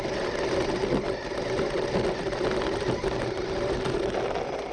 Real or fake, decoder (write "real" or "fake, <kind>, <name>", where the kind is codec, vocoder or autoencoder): real